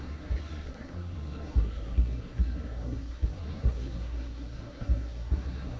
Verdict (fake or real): fake